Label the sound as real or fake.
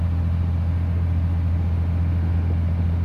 real